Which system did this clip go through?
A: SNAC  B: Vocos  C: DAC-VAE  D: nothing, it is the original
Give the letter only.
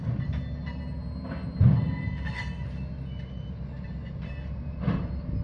D